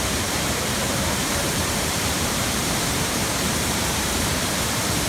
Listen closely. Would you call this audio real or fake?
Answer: fake